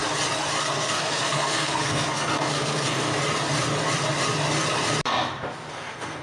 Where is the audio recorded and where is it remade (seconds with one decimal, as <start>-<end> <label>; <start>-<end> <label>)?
0.0-0.6 recorded; 0.6-3.1 remade; 3.1-5.7 recorded; 5.7-6.2 remade